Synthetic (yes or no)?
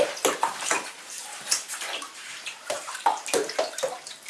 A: yes